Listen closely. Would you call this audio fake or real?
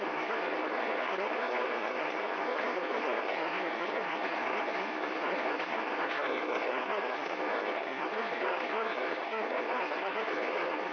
fake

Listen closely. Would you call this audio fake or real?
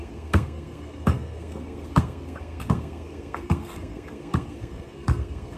fake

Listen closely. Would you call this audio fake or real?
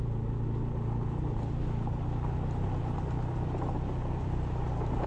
real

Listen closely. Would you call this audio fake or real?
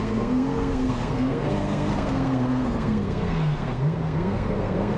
fake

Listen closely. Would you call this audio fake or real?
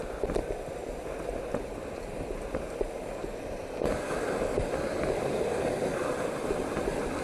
real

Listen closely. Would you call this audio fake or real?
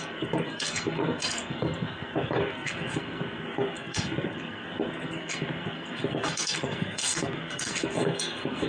fake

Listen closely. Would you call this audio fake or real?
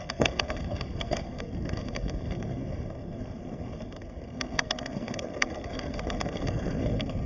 fake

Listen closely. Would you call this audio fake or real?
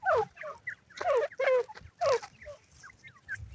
real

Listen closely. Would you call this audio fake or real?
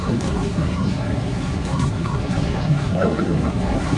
fake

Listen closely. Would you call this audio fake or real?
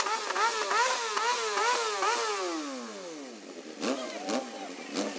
real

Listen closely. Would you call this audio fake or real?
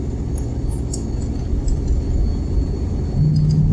real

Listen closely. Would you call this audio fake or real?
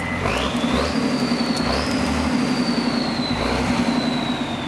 real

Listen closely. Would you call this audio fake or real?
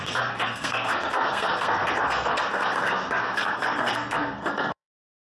fake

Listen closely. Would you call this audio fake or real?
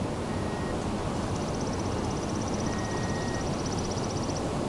real